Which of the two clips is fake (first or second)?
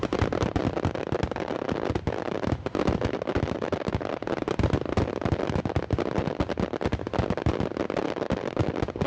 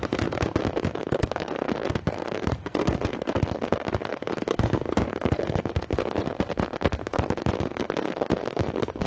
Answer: second